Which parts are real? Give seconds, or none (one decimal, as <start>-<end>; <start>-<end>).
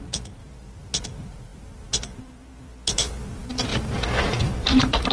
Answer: 0.0-3.7